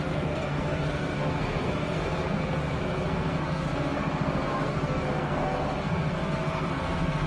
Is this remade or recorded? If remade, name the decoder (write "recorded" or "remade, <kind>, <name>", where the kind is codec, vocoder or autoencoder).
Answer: remade, codec, SNAC